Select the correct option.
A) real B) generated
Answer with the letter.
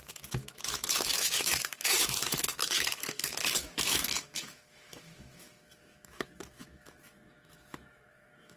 B